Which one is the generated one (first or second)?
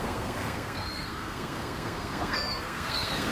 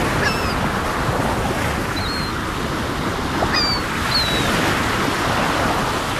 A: first